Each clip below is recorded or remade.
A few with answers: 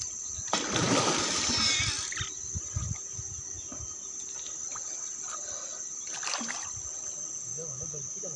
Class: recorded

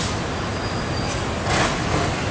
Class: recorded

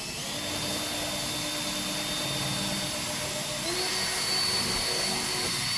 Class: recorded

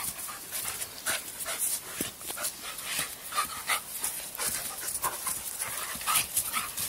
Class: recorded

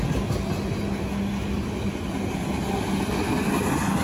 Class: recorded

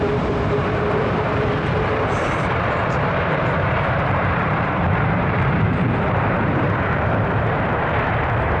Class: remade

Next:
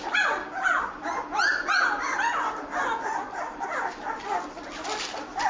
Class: recorded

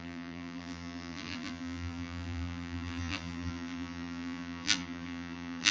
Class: remade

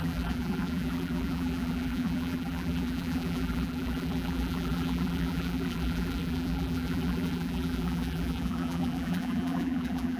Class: remade